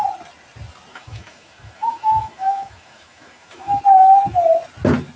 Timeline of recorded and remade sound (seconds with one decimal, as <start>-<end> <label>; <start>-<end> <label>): 0.0-0.9 recorded; 0.9-3.8 remade; 3.8-5.2 recorded